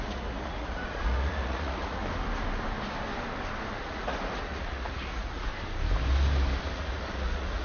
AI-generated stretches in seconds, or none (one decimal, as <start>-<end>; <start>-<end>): 0.0-2.0; 3.8-5.5; 6.6-7.6